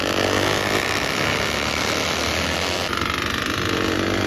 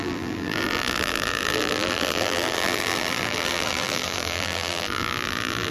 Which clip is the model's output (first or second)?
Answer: second